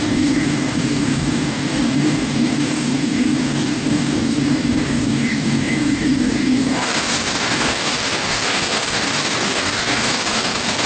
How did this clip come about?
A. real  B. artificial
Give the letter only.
B